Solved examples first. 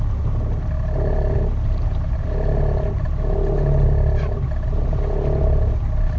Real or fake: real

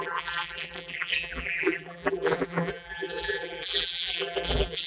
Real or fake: fake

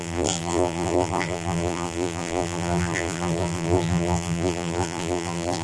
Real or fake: fake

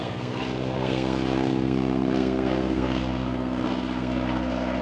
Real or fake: fake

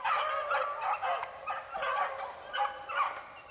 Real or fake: real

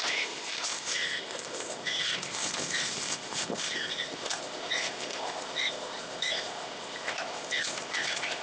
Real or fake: fake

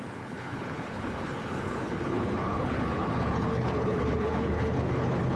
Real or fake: fake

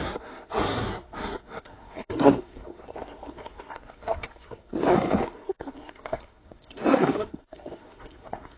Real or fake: fake